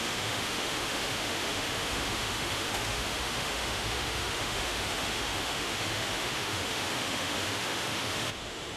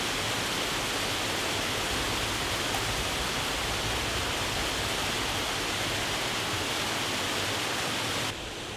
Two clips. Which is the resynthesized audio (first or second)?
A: first